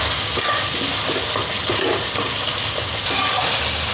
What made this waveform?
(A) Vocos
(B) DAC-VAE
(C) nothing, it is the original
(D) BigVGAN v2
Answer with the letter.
C